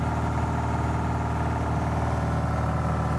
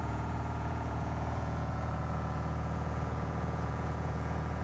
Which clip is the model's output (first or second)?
second